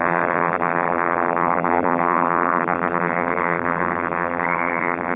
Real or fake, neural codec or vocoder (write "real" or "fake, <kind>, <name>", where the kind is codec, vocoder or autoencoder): fake, vocoder, BigVGAN v2